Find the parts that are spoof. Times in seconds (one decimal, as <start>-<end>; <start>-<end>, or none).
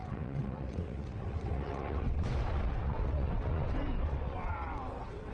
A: 0.0-5.3